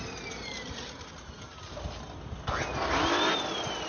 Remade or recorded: recorded